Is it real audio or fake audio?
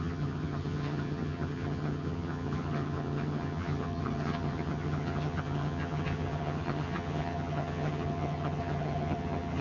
fake